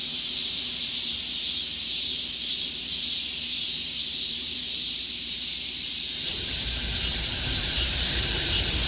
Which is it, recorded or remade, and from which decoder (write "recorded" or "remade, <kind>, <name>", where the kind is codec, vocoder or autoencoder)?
remade, vocoder, BigVGAN v2